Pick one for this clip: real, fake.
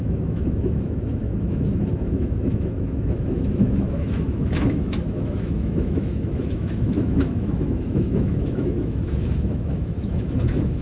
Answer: fake